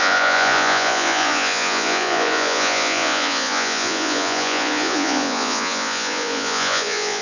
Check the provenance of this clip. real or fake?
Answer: fake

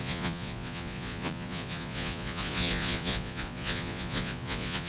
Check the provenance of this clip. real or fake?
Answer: fake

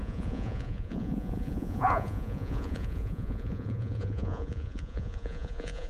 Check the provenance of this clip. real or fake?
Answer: fake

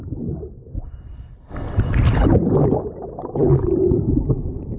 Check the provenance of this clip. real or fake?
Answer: real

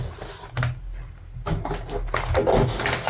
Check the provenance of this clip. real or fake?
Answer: real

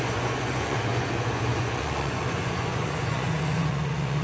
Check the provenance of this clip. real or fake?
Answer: fake